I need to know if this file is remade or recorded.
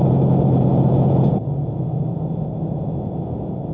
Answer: remade